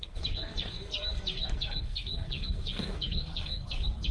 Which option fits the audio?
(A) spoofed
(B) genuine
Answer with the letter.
A